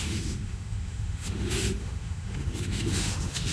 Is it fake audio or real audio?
fake